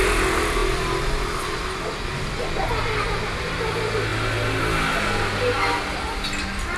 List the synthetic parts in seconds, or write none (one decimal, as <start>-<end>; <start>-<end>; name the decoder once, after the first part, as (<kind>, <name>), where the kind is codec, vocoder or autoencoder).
none